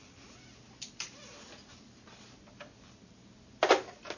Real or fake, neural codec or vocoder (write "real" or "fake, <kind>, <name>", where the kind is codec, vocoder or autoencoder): real